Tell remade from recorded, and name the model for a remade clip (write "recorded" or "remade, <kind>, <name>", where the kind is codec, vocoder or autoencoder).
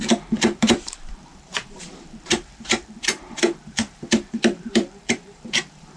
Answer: remade, vocoder, BigVGAN v2